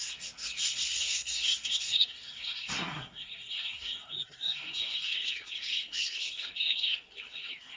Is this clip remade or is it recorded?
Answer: remade